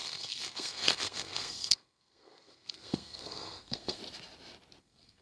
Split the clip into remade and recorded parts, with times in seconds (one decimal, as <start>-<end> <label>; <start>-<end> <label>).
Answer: 0.0-4.0 remade; 4.0-4.8 recorded; 4.8-5.2 remade